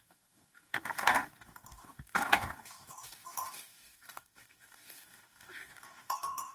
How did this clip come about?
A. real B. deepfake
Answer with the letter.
B